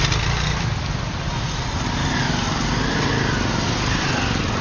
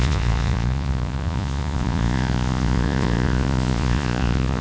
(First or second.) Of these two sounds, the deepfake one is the second